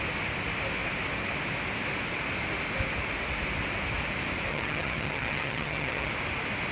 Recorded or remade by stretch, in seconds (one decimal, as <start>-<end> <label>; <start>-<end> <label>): 0.0-4.5 recorded; 4.5-6.1 remade; 6.1-6.7 recorded